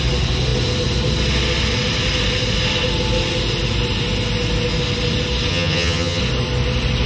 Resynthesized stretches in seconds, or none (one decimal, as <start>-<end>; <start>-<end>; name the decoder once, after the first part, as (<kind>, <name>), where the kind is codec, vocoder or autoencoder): 5.5-6.2 (vocoder, HiFi-GAN)